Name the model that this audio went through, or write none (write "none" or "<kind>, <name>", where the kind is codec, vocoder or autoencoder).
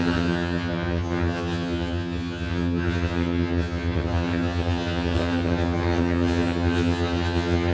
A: vocoder, HiFi-GAN